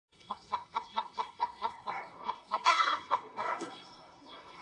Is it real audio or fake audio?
fake